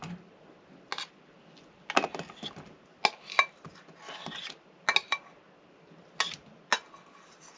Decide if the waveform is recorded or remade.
recorded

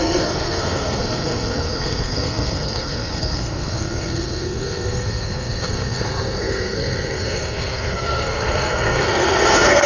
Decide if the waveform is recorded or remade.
remade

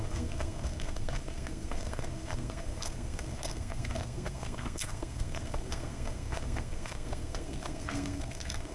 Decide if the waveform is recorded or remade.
remade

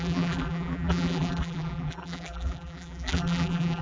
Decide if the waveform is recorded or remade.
remade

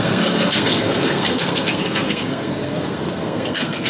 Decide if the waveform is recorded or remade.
remade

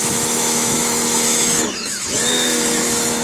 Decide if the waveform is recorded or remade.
remade